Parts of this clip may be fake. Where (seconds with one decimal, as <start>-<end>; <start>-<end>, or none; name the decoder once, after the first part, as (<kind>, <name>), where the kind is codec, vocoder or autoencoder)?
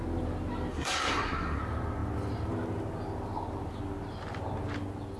0.7-1.6 (codec, SNAC)